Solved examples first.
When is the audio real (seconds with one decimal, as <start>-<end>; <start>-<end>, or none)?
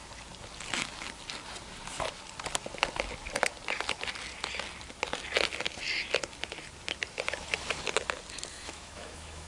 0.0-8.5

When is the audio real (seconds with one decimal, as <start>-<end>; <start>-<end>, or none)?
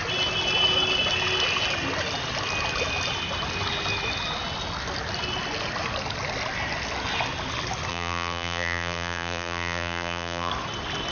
0.0-7.9; 10.5-11.1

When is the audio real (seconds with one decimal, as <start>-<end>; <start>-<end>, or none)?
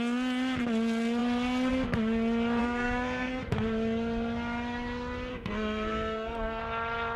0.0-2.6; 3.4-5.3; 6.6-7.2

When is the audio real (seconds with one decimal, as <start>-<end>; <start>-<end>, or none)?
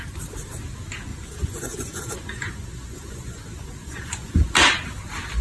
0.0-1.1; 4.3-5.4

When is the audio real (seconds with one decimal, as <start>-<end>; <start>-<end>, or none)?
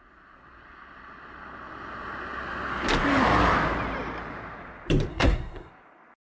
0.0-5.1; 5.7-6.3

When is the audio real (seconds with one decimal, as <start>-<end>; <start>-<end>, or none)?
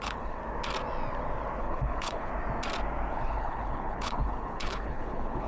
0.4-1.6; 2.3-3.1